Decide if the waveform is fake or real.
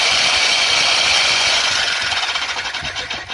fake